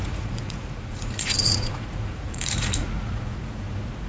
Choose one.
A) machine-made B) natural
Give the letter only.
A